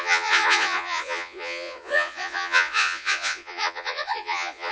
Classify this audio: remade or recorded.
remade